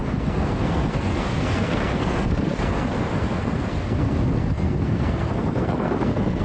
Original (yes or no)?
no